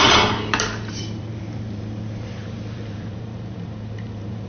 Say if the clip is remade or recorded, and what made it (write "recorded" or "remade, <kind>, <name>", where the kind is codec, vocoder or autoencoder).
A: remade, vocoder, BigVGAN v2